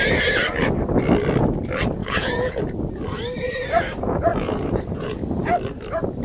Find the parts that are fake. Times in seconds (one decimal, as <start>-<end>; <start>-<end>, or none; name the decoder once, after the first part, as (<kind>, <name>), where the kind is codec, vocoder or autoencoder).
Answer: 2.0-2.6 (vocoder, Vocos); 4.3-5.2

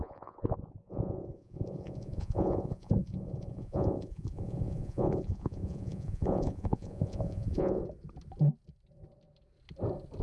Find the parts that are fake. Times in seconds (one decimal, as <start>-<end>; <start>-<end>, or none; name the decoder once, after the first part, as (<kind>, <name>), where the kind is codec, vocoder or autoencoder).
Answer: 0.0-7.8 (vocoder, Vocos)

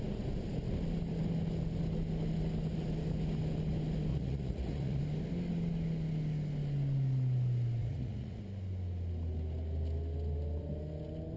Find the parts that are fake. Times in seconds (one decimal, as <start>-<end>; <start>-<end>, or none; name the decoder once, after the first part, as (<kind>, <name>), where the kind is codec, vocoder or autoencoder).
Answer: 4.1-5.0 (vocoder, Vocos); 7.8-8.4

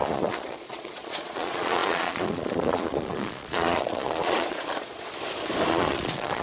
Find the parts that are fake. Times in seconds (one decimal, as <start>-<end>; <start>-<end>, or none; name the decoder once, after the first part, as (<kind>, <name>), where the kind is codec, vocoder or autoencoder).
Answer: 0.0-5.1 (vocoder, Vocos); 5.7-6.4

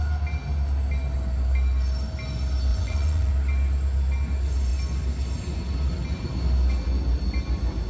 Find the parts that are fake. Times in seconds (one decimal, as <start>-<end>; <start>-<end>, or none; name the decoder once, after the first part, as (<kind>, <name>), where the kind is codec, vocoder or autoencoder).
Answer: 2.7-3.3 (vocoder, Vocos)